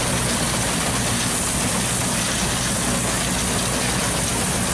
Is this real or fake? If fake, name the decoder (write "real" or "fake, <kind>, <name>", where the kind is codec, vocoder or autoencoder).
real